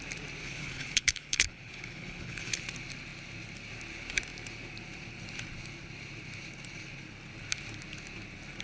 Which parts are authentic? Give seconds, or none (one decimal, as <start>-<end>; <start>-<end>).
0.0-0.4; 2.6-8.6